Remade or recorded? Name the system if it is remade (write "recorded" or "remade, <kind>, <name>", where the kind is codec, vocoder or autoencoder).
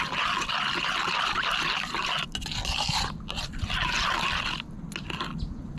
recorded